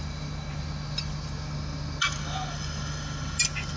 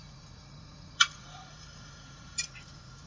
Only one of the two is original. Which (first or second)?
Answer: first